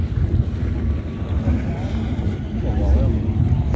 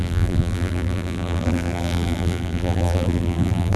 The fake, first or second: second